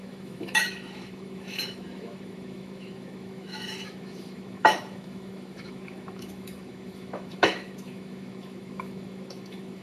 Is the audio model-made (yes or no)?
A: yes